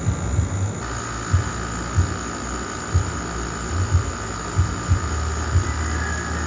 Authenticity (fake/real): real